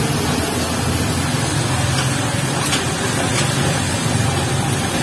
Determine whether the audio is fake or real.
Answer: real